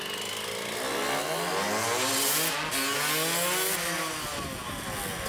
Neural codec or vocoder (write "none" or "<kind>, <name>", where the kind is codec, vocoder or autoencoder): none